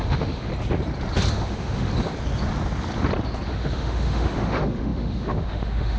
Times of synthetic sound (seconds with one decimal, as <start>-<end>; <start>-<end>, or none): 0.0-0.5; 1.3-1.9; 3.5-6.0